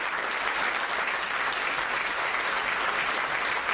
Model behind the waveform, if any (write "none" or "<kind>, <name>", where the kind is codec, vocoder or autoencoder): none